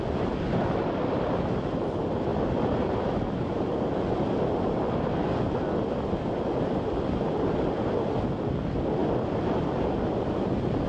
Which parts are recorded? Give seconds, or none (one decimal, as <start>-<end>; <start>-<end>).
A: 0.0-9.0; 9.6-10.9